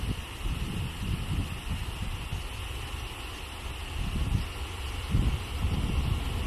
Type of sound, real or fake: real